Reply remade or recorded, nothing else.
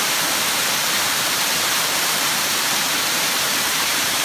remade